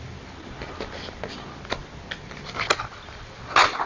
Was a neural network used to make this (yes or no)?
no